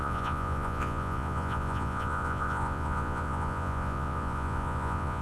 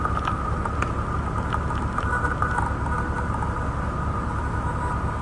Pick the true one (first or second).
second